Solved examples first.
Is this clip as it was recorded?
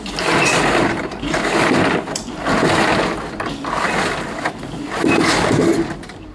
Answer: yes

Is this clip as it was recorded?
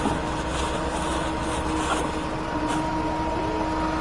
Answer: yes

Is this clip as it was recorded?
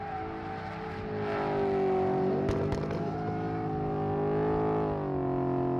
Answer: yes